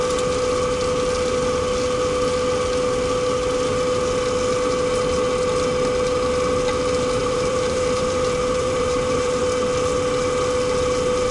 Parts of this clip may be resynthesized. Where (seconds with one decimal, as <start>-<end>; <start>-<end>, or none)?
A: 7.2-9.4